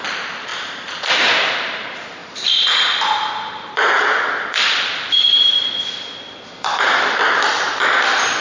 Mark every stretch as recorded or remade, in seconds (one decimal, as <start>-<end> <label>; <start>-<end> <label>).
0.0-0.5 recorded; 0.5-1.0 remade; 1.0-2.2 recorded; 2.2-7.2 remade; 7.2-8.4 recorded